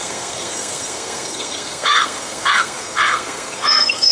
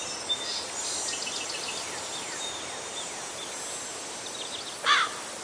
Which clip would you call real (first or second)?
second